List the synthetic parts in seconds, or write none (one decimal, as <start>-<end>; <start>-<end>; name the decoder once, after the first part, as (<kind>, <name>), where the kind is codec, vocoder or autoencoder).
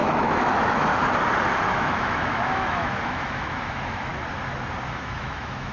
0.0-0.9 (autoencoder, DAC-VAE); 1.7-4.1; 4.9-5.7